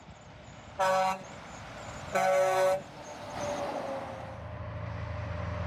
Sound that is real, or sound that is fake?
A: real